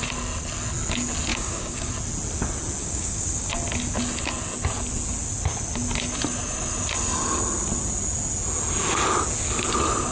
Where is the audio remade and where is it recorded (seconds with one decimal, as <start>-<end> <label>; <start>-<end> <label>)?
0.0-1.3 recorded; 1.3-1.9 remade; 1.9-2.8 recorded; 2.8-3.5 remade; 3.5-10.1 recorded